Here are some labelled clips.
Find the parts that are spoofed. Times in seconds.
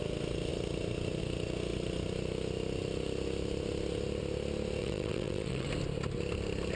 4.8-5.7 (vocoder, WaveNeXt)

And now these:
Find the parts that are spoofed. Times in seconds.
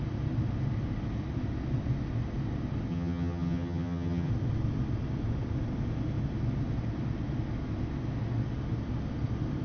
2.9-4.3 (vocoder, HiFi-GAN)